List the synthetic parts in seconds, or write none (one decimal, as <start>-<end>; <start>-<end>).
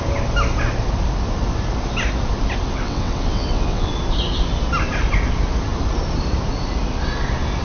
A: 2.7-3.9